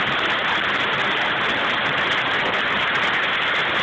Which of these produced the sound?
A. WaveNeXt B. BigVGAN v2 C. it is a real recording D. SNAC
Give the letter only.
C